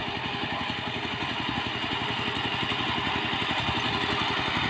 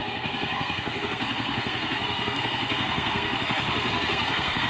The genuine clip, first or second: first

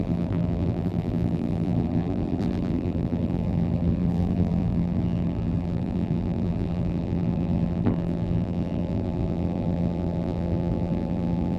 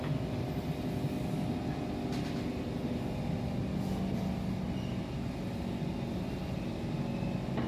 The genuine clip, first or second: second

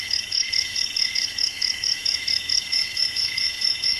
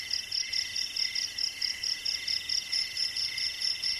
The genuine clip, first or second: second